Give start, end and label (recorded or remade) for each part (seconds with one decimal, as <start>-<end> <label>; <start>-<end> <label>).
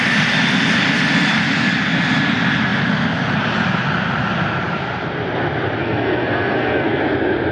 0.0-5.8 recorded; 5.8-7.0 remade; 7.0-7.5 recorded